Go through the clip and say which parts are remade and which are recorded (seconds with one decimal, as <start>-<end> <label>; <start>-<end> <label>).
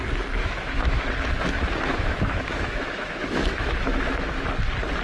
0.0-0.4 recorded; 0.4-1.0 remade; 1.0-1.9 recorded; 1.9-4.5 remade; 4.5-5.0 recorded